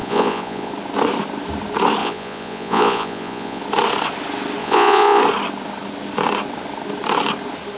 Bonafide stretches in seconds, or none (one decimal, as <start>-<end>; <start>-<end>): 0.7-2.0; 3.6-4.6; 5.2-7.8